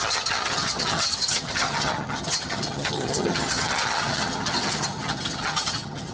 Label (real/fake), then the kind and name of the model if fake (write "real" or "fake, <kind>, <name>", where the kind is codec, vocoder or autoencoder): fake, vocoder, HiFi-GAN